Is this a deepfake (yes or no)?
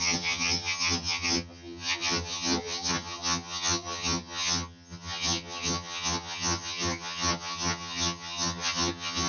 yes